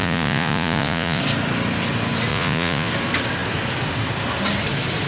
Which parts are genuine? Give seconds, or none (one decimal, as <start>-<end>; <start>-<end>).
1.2-2.3; 2.9-5.1